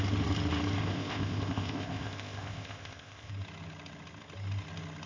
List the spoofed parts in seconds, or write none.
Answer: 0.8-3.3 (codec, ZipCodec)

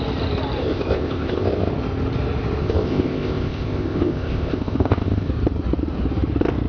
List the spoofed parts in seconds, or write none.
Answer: 0.6-1.7 (codec, ZipCodec); 2.6-5.3

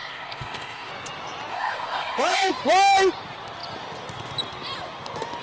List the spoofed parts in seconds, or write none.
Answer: 0.0-0.9 (codec, ZipCodec); 1.5-2.5

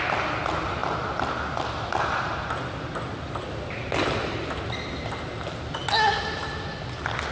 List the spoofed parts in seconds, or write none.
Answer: none

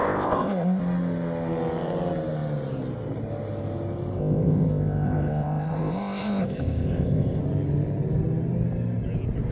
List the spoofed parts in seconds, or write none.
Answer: 0.0-0.8 (codec, ZipCodec); 4.2-7.4

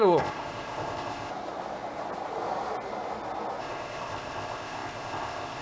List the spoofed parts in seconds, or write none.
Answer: 0.0-1.3 (codec, ZipCodec); 3.6-5.6

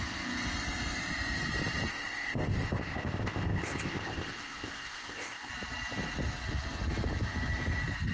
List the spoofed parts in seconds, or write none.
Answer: 1.9-5.5 (codec, ZipCodec)